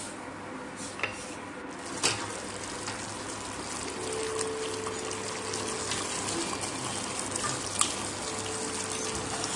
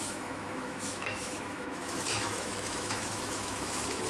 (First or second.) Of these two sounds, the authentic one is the first